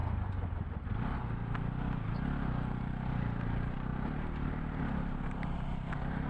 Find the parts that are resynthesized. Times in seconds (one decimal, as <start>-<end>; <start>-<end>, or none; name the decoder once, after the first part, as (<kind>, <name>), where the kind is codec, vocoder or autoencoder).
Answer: 2.8-6.3 (vocoder, BigVGAN v2)